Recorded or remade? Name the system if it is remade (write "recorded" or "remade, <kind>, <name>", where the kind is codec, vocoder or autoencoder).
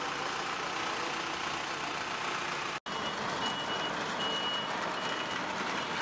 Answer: recorded